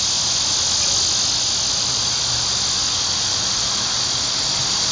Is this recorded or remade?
recorded